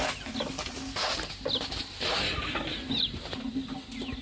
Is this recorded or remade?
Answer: recorded